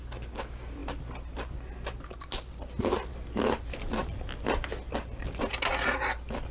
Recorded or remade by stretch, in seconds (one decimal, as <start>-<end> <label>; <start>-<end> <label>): 0.0-6.5 recorded